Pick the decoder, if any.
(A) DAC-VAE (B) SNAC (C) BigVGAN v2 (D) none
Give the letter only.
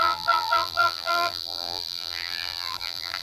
C